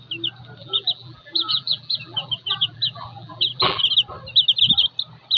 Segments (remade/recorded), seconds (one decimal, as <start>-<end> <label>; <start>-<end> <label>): 0.0-0.6 recorded; 0.6-3.8 remade; 3.8-5.4 recorded